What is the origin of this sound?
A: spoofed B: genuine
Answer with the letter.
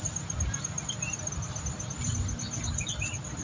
B